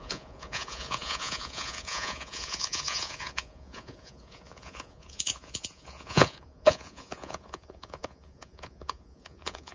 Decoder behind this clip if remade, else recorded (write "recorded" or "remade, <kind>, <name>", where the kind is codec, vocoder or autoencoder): remade, vocoder, Vocos